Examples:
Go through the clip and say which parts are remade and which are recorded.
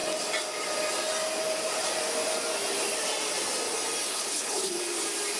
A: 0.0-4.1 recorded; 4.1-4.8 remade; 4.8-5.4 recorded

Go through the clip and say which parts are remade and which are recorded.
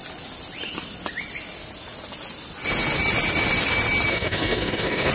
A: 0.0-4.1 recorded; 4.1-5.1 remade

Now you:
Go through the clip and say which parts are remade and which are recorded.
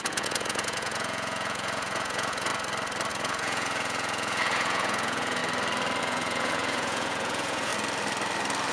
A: 0.0-2.5 remade; 2.5-3.1 recorded; 3.1-5.4 remade; 5.4-6.0 recorded; 6.0-7.7 remade; 7.7-8.7 recorded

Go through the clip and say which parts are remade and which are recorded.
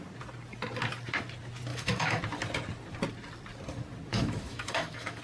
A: 0.0-1.7 recorded; 1.7-2.2 remade; 2.2-4.1 recorded; 4.1-5.2 remade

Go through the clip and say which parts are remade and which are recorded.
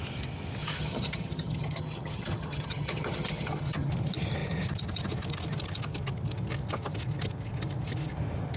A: 0.0-0.6 recorded; 0.6-3.9 remade; 3.9-8.6 recorded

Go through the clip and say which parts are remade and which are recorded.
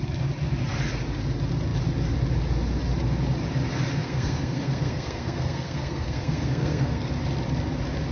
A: 0.0-4.0 recorded; 4.0-7.1 remade; 7.1-8.1 recorded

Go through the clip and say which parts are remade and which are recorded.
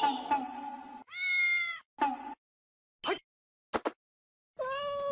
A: 0.0-5.1 recorded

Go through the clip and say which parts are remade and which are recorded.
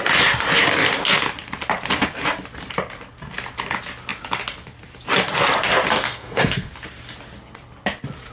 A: 0.0-6.0 recorded; 6.0-6.7 remade; 6.7-8.3 recorded